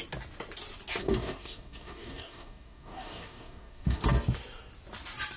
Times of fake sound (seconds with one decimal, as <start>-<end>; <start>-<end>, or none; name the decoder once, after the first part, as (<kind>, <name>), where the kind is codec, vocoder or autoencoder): 1.0-4.0 (codec, DAC)